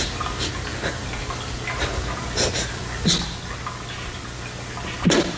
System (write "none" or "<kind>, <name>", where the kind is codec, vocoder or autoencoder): none